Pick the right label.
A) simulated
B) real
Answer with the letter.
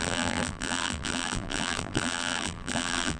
A